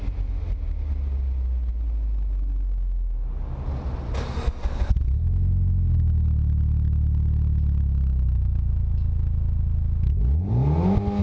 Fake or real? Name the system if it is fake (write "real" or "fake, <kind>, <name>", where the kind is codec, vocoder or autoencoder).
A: real